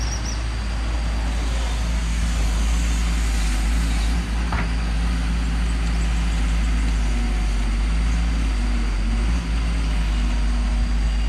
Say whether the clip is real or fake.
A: real